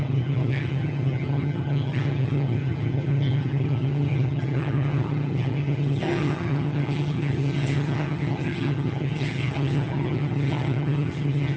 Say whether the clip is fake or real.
fake